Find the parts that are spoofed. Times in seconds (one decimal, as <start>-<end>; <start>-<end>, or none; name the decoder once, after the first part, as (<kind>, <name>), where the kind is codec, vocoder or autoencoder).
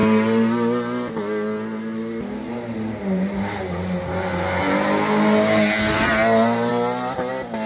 none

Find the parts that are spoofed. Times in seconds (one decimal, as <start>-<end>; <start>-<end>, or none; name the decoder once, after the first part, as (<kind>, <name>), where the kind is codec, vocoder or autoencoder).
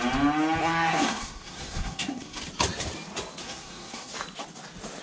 0.6-2.4 (codec, SNAC); 3.4-4.1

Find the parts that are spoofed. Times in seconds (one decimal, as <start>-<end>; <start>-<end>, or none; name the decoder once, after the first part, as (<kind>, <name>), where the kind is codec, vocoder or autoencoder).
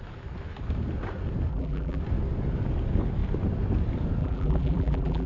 1.5-2.0 (vocoder, BigVGAN v2); 4.2-5.3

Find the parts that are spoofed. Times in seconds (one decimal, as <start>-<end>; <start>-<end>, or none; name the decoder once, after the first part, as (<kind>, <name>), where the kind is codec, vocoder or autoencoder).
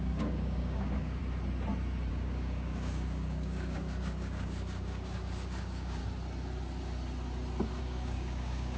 0.0-1.2 (codec, DAC); 2.1-6.0; 7.8-8.8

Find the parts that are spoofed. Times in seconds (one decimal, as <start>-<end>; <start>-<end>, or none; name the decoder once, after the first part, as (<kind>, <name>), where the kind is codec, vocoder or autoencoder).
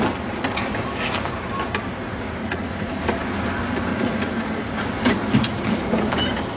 2.4-3.0 (vocoder, Vocos); 3.9-4.8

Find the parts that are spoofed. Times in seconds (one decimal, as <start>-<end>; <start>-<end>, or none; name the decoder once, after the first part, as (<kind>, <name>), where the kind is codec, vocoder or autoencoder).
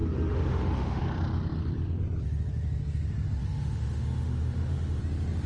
0.0-1.0 (autoencoder, DAC-VAE); 3.4-5.0